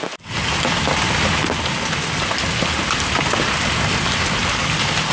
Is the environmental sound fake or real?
real